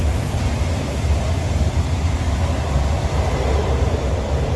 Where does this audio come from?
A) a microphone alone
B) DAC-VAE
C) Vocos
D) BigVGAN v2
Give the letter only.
A